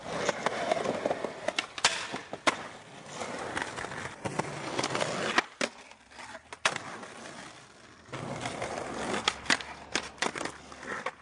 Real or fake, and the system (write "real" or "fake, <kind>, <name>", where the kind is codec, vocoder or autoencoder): real